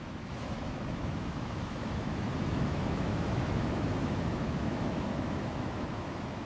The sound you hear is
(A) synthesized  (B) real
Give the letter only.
A